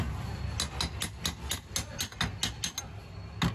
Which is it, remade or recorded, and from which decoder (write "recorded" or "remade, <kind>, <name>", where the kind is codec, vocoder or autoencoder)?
recorded